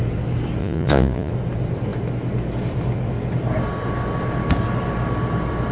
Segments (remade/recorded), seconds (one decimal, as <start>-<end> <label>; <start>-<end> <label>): 0.0-0.6 recorded; 0.6-1.3 remade; 1.3-5.7 recorded